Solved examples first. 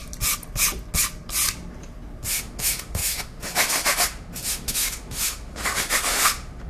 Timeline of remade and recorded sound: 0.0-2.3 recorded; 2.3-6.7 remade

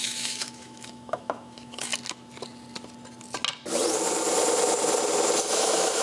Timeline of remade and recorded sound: 0.0-1.9 remade; 1.9-5.5 recorded; 5.5-6.0 remade